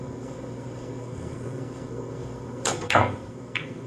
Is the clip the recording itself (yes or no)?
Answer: no